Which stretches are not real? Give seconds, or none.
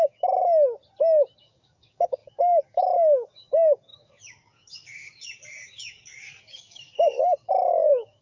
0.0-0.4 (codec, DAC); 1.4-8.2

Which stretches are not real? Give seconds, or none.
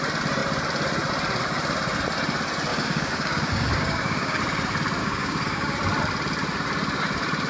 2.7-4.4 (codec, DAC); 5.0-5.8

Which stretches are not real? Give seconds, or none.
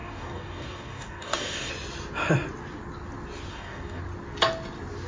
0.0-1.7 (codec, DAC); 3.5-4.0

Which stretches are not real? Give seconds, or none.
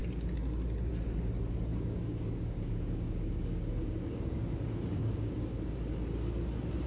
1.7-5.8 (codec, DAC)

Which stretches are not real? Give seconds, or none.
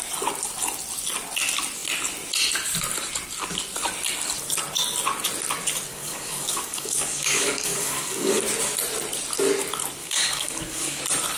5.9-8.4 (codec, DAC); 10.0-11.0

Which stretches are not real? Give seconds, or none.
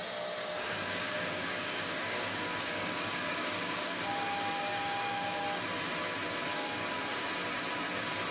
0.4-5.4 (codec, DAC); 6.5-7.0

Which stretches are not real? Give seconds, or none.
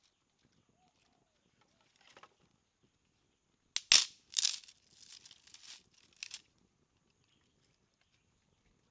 none